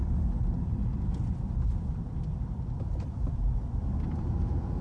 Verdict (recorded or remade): remade